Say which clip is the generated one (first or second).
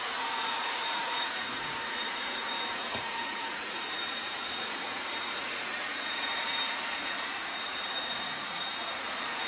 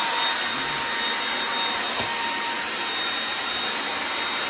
first